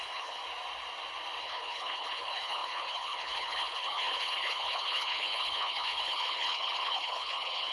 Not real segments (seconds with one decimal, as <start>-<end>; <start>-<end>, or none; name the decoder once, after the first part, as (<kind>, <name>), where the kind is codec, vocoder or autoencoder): 0.0-0.4 (codec, HILCodec); 1.4-7.7